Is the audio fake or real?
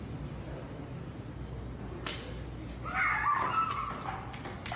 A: real